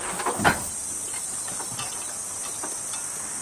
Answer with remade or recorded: recorded